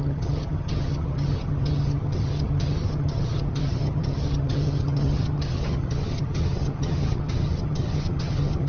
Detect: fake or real fake